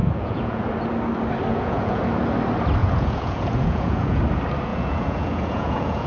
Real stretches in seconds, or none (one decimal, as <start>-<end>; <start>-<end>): 0.6-1.5; 2.0-2.8; 4.2-4.7